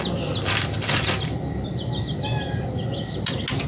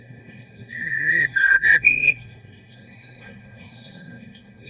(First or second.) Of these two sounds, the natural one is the first